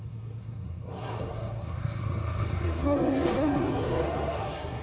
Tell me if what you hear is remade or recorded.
remade